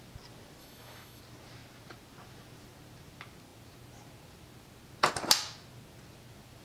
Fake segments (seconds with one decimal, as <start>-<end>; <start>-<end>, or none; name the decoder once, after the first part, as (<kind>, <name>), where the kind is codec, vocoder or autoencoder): 0.6-1.2 (autoencoder, DAC-VAE)